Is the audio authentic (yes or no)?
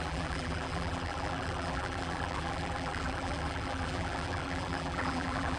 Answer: no